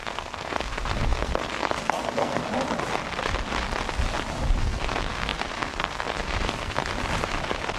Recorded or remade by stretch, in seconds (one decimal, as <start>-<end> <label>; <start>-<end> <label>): 0.0-2.4 remade; 2.4-4.6 recorded; 4.6-6.8 remade; 6.8-7.8 recorded